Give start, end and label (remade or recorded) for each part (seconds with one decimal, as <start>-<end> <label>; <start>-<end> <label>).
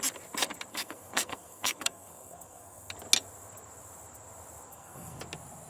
0.0-0.7 recorded; 0.7-2.9 remade; 2.9-4.7 recorded; 4.7-5.2 remade; 5.2-5.7 recorded